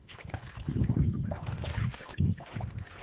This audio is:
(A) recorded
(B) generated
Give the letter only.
B